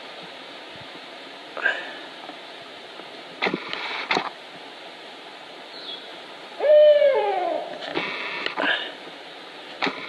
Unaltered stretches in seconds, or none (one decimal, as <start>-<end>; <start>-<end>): 7.9-8.4